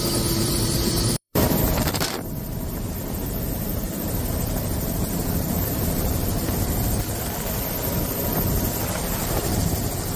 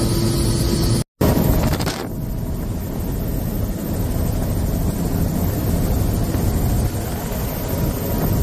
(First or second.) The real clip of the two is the second